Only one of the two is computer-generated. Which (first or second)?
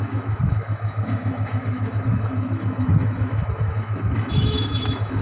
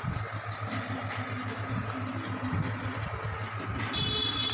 first